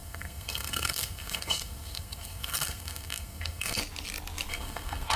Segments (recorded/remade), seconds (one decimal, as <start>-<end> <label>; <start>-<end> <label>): 0.0-3.8 remade; 3.8-4.5 recorded; 4.5-5.2 remade

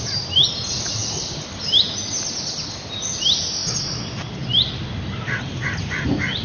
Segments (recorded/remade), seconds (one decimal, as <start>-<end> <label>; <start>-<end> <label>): 0.0-6.4 recorded

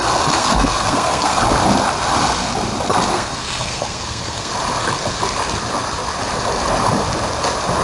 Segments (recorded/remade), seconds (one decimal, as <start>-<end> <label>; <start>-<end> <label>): 0.0-0.4 recorded; 0.4-1.4 remade; 1.4-3.1 recorded; 3.1-4.5 remade; 4.5-7.8 recorded

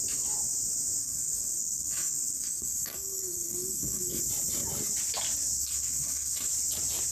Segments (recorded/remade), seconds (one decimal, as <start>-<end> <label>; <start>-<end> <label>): 0.0-1.0 recorded; 1.0-4.2 remade; 4.2-5.6 recorded; 5.6-6.5 remade; 6.5-7.1 recorded

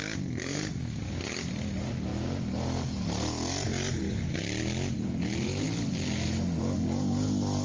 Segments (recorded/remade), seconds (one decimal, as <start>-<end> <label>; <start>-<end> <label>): 0.0-0.4 recorded; 0.4-1.0 remade; 1.0-7.6 recorded